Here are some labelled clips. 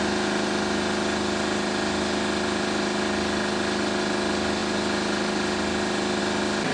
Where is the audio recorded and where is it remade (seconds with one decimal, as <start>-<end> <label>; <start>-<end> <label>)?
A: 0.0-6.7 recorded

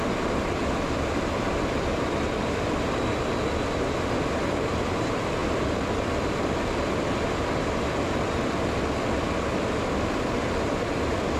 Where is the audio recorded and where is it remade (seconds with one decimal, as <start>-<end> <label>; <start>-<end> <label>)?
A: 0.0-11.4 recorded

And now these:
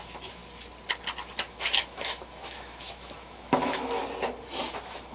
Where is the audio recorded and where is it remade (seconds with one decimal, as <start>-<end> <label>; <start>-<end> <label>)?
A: 0.0-0.4 remade; 0.4-1.5 recorded; 1.5-4.0 remade; 4.0-4.6 recorded; 4.6-5.1 remade

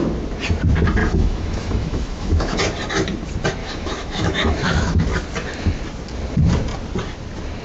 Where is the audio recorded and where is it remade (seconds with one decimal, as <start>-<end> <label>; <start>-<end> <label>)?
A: 0.0-1.0 recorded; 1.0-2.6 remade; 2.6-3.6 recorded; 3.6-5.0 remade; 5.0-7.6 recorded

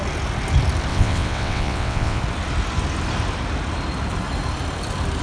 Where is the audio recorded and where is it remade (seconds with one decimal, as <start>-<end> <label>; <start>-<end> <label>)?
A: 0.0-0.9 recorded; 0.9-2.2 remade; 2.2-5.2 recorded

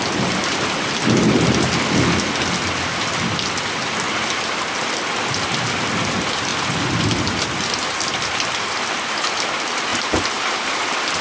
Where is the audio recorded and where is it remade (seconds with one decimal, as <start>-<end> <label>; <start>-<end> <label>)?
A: 0.0-9.9 recorded; 9.9-11.2 remade